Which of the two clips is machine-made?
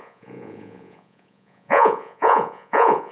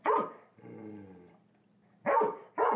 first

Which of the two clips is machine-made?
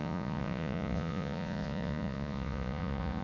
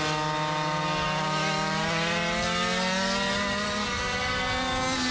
first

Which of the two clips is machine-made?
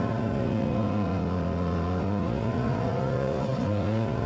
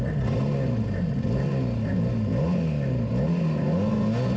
first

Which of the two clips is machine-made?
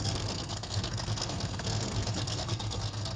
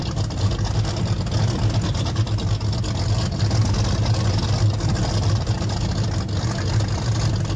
first